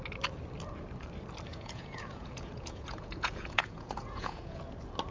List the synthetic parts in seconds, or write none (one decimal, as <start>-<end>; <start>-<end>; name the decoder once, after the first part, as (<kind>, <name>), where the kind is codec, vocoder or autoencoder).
1.5-4.6 (vocoder, Vocos)